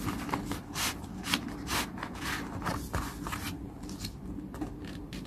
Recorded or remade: recorded